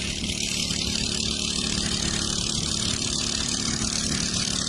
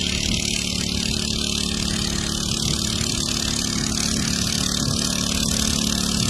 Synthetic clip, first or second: first